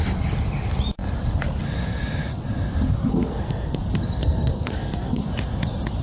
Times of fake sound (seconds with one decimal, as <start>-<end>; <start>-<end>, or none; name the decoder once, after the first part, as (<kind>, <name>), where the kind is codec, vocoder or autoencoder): 3.1-3.8 (codec, SNAC); 4.2-5.2